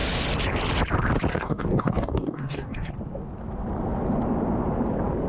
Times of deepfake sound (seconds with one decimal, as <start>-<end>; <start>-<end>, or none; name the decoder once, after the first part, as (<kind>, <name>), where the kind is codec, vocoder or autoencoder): 1.3-2.9 (codec, DAC)